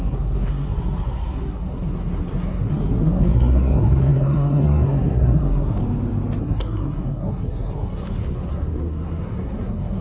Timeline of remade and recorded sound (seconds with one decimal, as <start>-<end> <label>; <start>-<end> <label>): 0.0-5.8 remade; 5.8-6.4 recorded; 6.4-10.0 remade